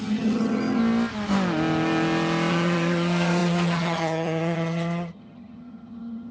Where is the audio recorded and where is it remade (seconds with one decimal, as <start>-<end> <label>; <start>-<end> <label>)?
0.0-0.8 remade; 0.8-2.5 recorded; 2.5-6.3 remade